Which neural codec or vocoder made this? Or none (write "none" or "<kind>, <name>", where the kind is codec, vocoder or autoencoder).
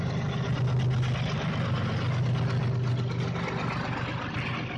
none